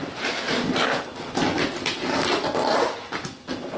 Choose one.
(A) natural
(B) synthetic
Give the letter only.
A